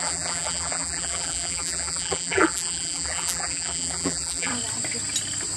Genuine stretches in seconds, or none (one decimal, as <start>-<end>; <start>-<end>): 4.5-5.6